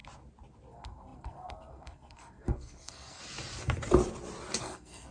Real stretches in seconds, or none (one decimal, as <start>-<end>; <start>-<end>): 0.0-0.7; 3.2-4.6